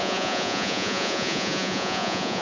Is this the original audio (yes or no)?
no